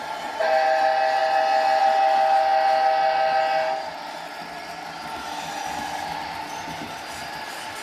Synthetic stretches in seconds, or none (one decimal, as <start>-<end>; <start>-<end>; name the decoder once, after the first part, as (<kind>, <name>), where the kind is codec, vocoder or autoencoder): none

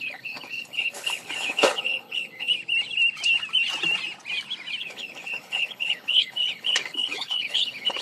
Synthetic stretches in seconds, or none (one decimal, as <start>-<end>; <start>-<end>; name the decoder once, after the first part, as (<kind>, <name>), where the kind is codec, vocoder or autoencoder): 0.0-2.5 (codec, HILCodec); 4.8-8.0

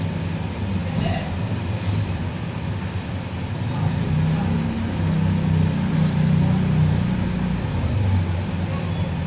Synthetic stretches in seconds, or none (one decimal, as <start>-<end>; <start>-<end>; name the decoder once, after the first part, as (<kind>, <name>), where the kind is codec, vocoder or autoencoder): none

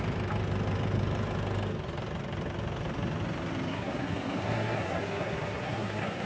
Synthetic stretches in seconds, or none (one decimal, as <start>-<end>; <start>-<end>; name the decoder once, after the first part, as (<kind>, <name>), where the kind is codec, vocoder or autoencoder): 3.7-6.3 (codec, SNAC)

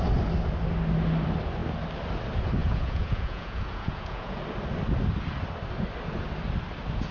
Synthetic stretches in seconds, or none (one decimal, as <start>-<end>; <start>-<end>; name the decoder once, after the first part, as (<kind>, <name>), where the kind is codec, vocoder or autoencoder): 2.6-4.4 (vocoder, Vocos)

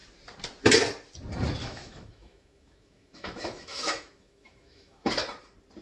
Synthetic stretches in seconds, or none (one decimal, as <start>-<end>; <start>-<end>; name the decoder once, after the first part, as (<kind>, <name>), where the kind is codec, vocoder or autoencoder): 1.6-5.1 (autoencoder, DAC-VAE)

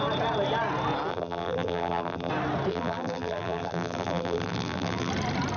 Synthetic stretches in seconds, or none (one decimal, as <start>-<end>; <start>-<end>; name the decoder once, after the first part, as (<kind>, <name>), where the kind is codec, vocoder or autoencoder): 1.1-2.3 (vocoder, BigVGAN v2); 2.7-5.1

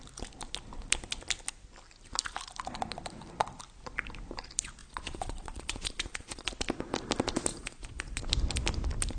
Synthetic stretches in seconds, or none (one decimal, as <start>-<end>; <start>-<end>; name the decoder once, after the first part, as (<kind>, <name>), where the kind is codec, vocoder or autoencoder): 4.8-6.5 (vocoder, Vocos); 7.5-8.2